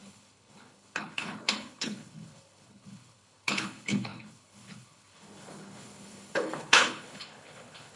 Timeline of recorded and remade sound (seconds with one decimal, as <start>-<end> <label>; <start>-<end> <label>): 0.0-8.0 remade